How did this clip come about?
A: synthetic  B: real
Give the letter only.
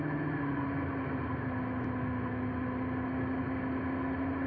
B